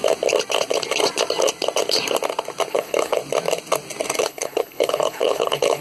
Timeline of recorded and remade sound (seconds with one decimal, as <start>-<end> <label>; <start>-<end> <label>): 0.0-2.7 recorded; 2.7-3.2 remade; 3.2-4.2 recorded; 4.2-5.8 remade